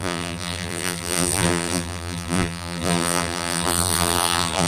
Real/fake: fake